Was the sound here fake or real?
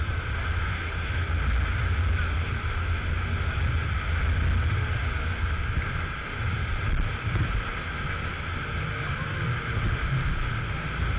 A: real